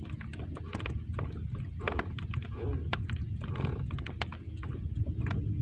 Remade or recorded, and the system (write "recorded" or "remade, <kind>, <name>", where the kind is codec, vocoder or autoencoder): recorded